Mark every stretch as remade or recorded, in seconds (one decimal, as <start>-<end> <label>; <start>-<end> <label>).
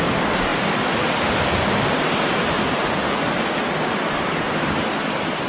0.0-0.5 recorded; 0.5-2.1 remade; 2.1-5.5 recorded